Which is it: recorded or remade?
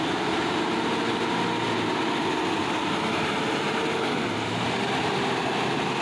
recorded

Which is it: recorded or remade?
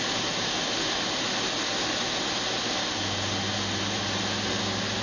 recorded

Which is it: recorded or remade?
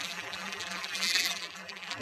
remade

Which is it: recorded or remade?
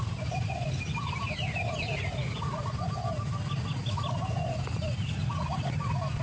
recorded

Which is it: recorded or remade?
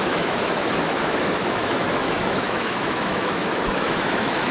remade